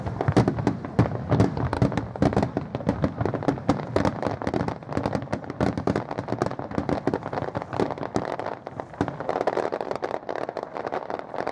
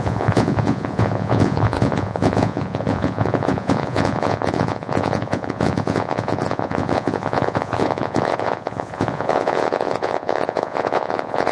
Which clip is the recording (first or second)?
first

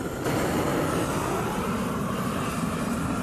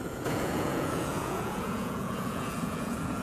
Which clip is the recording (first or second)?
first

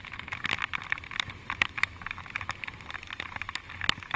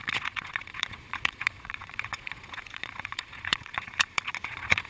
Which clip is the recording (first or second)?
first